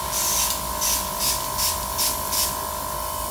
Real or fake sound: real